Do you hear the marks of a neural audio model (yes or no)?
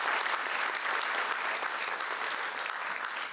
no